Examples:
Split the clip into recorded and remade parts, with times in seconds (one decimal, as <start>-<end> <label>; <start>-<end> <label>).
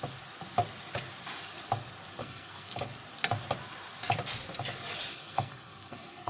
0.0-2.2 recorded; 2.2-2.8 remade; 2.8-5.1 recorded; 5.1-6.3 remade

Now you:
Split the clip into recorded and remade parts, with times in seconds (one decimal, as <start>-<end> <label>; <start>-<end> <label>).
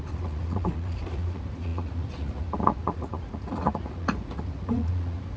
0.0-5.4 remade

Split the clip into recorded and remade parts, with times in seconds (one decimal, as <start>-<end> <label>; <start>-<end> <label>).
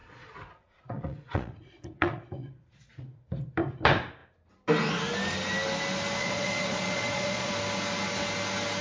0.0-3.2 remade; 3.2-6.2 recorded; 6.2-7.5 remade; 7.5-8.8 recorded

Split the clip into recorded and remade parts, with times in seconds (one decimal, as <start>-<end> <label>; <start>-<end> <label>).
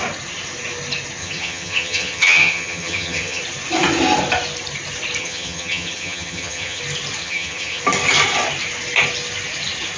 0.0-1.2 recorded; 1.2-3.4 remade; 3.4-5.2 recorded; 5.2-6.8 remade; 6.8-7.2 recorded; 7.2-7.8 remade; 7.8-10.0 recorded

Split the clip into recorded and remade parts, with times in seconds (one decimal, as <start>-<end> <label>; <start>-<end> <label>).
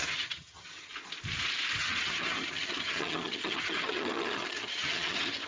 0.0-0.9 remade; 0.9-1.8 recorded; 1.8-5.5 remade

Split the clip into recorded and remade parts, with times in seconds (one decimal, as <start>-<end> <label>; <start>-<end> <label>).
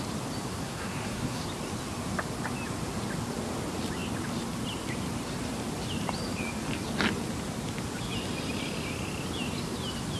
0.0-0.5 recorded; 0.5-1.4 remade; 1.4-10.2 recorded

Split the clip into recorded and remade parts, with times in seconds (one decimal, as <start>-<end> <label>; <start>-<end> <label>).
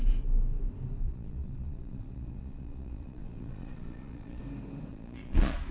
0.0-1.0 recorded; 1.0-4.4 remade; 4.4-4.9 recorded; 4.9-5.7 remade